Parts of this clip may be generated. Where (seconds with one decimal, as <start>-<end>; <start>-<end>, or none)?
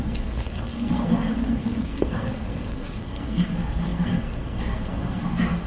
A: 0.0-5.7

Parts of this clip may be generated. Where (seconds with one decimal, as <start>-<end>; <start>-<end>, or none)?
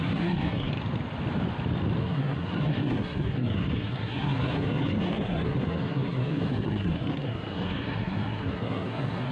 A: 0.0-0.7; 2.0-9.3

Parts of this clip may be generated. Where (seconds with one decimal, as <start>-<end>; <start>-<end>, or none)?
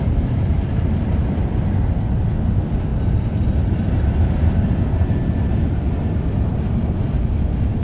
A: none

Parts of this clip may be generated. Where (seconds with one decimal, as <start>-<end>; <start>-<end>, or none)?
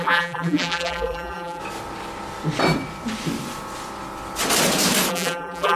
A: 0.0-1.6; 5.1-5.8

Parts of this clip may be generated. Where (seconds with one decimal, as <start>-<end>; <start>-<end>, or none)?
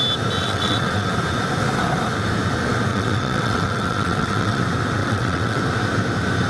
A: 0.4-1.1; 2.9-4.6; 5.0-5.6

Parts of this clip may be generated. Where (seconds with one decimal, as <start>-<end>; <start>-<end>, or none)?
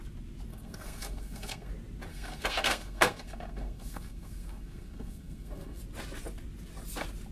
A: 0.5-1.7; 2.1-5.8